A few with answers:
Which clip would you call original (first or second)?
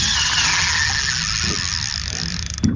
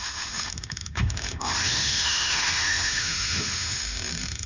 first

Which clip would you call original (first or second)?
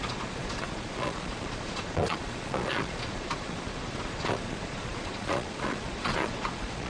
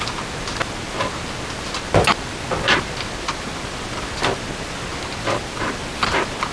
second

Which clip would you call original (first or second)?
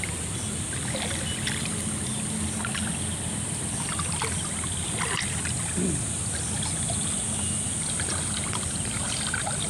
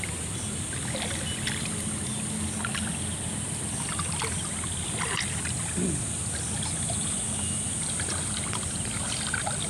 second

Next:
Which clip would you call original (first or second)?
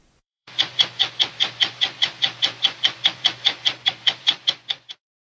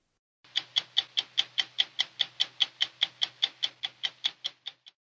second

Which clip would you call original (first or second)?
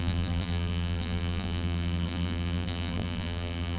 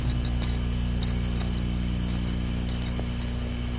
second